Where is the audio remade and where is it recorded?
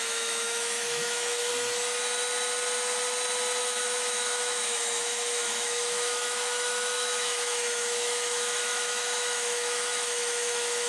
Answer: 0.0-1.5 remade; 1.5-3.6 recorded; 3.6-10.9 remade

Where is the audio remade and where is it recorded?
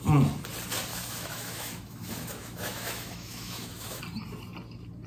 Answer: 0.0-0.9 recorded; 0.9-4.0 remade; 4.0-5.1 recorded